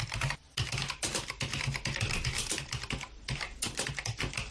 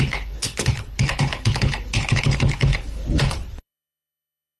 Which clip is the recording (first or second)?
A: first